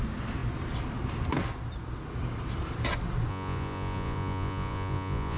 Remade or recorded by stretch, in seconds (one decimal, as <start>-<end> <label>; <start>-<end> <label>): 0.0-3.3 recorded; 3.3-5.4 remade